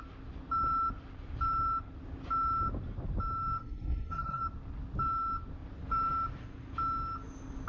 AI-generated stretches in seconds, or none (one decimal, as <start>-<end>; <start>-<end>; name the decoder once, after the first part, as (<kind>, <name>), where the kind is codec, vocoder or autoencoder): 3.6-4.4 (codec, SNAC)